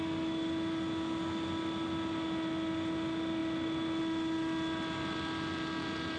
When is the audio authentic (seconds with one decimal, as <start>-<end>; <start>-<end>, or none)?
0.0-6.2